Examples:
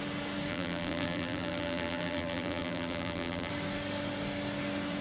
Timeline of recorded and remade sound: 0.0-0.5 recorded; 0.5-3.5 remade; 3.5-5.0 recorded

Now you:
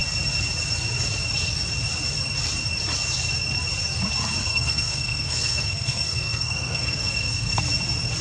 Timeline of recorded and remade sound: 0.0-4.4 recorded; 4.4-7.6 remade; 7.6-8.2 recorded

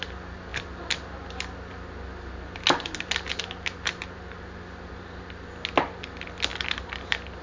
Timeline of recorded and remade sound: 0.0-6.5 recorded; 6.5-7.4 remade

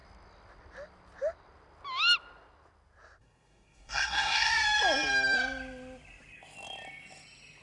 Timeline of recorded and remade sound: 0.0-3.2 recorded; 3.2-4.5 remade; 4.5-7.6 recorded

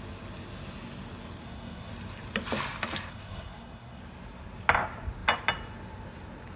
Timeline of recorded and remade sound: 0.0-1.4 recorded; 1.4-1.9 remade; 1.9-3.1 recorded; 3.1-4.0 remade; 4.0-6.6 recorded

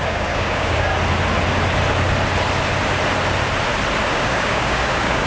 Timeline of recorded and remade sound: 0.0-0.9 remade; 0.9-4.1 recorded; 4.1-5.3 remade

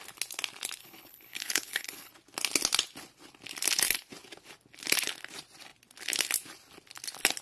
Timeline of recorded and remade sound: 0.0-0.8 recorded; 0.8-2.1 remade; 2.1-7.4 recorded

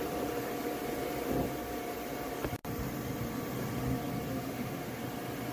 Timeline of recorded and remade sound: 0.0-4.3 recorded; 4.3-5.0 remade; 5.0-5.5 recorded